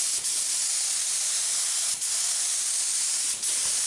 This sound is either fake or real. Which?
real